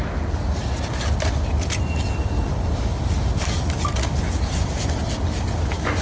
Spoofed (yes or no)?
no